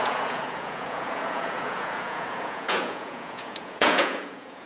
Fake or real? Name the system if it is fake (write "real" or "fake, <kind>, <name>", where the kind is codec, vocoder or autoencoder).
fake, vocoder, Vocos